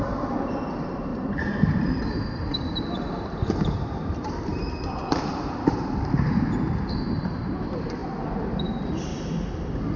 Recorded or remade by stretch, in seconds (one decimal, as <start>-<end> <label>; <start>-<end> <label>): 0.0-4.5 remade; 4.5-5.1 recorded; 5.1-8.0 remade; 8.0-8.6 recorded; 8.6-9.1 remade; 9.1-10.0 recorded